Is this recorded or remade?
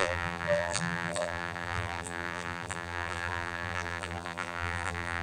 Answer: remade